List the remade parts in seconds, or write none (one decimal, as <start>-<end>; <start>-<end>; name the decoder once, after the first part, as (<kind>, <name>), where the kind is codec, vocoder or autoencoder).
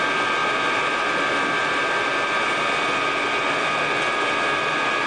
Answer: none